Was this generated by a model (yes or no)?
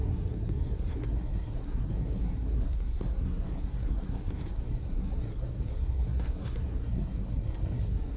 yes